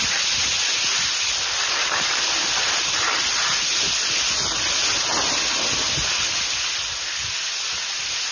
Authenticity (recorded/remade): recorded